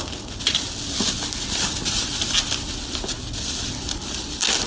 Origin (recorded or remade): recorded